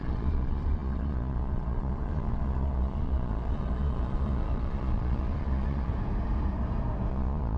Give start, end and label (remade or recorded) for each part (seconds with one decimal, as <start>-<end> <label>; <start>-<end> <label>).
0.0-5.9 remade; 5.9-7.1 recorded; 7.1-7.6 remade